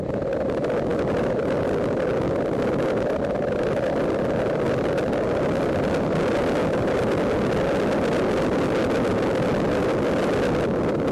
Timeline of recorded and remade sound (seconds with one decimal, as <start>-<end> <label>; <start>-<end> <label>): 0.0-11.1 recorded